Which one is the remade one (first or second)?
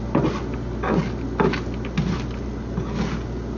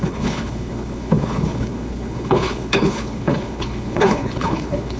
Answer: second